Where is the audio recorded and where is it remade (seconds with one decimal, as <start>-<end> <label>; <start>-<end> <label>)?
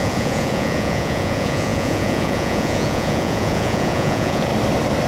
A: 0.0-4.5 remade; 4.5-5.1 recorded